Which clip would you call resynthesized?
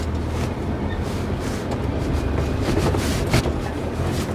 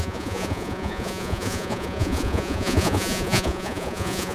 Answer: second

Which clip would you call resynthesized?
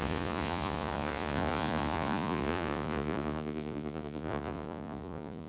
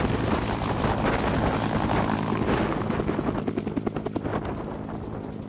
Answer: first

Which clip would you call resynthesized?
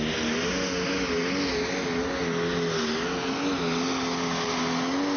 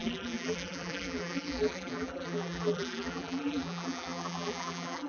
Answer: second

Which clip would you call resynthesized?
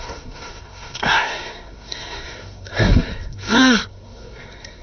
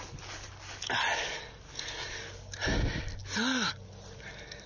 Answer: first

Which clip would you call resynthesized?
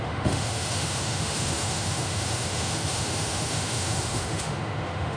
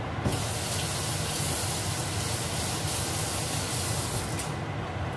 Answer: first